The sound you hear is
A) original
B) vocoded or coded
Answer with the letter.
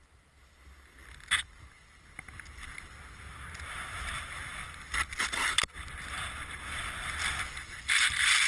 A